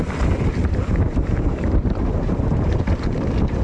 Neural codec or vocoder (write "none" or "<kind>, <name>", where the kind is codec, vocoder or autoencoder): vocoder, BigVGAN v2